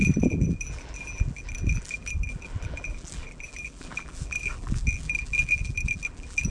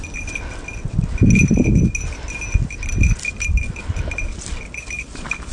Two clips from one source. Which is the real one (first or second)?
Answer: second